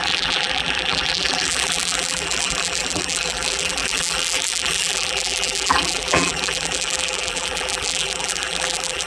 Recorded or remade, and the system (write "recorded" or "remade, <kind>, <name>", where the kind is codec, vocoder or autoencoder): remade, vocoder, BigVGAN v2